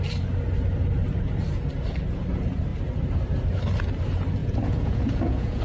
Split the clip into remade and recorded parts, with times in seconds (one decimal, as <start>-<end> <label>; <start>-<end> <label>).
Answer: 0.0-4.4 recorded; 4.4-5.6 remade